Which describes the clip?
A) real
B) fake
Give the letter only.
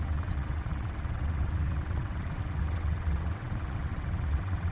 B